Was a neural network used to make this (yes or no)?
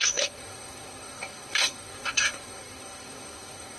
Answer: yes